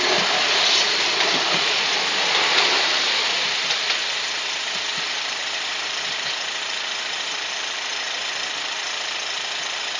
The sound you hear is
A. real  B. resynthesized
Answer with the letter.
B